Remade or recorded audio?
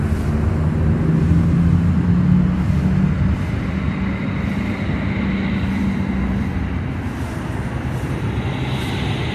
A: recorded